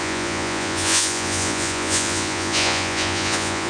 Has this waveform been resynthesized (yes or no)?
yes